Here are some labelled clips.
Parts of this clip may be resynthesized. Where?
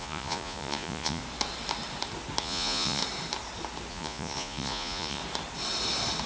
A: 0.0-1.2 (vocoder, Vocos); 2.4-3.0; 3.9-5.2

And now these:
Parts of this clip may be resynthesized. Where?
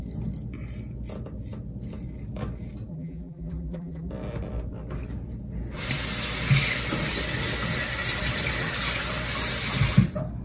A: 2.9-4.1 (vocoder, BigVGAN v2)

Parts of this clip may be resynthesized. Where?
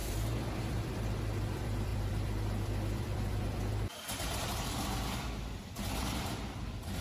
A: 0.0-7.0 (vocoder, BigVGAN v2)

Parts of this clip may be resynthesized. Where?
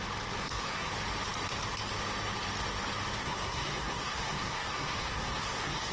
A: 0.4-0.9 (codec, SNAC); 3.2-5.9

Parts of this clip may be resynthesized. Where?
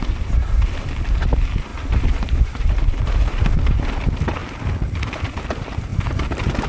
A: 1.7-3.0 (vocoder, BigVGAN v2); 4.4-5.2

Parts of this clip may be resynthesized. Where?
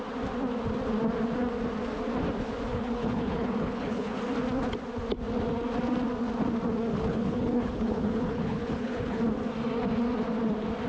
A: 2.7-4.2 (codec, HILCodec); 6.9-9.2